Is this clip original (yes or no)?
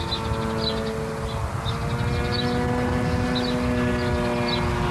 yes